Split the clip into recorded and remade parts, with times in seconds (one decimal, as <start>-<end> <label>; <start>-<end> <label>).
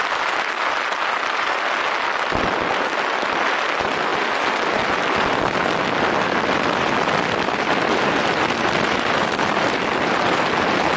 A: 0.0-11.0 recorded